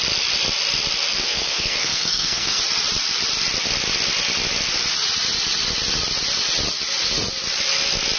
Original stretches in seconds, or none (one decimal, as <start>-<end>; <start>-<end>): 0.0-1.1; 2.6-8.2